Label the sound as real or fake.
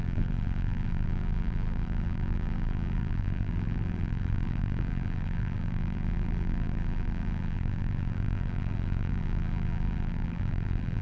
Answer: fake